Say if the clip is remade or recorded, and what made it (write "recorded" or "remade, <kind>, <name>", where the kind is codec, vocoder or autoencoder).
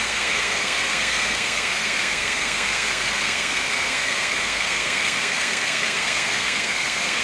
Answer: remade, codec, SNAC